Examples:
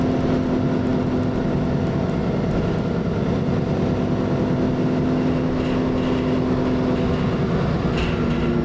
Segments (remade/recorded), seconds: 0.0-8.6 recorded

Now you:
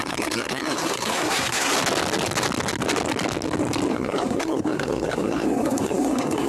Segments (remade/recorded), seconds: 0.0-1.7 remade; 1.7-3.9 recorded; 3.9-6.5 remade

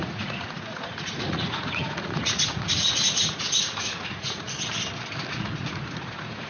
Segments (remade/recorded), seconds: 0.0-4.5 remade; 4.5-5.3 recorded; 5.3-6.5 remade

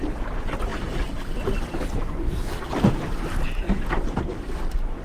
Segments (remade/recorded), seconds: 0.0-5.0 recorded

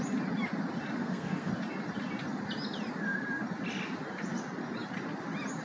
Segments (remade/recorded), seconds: 0.0-1.0 recorded; 1.0-1.5 remade; 1.5-5.6 recorded